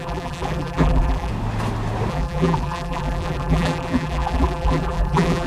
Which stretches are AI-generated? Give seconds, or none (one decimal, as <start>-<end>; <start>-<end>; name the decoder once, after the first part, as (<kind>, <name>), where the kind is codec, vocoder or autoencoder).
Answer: 0.0-1.3 (vocoder, BigVGAN v2); 2.1-5.5